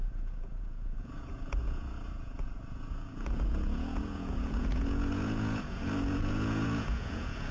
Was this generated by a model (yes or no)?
yes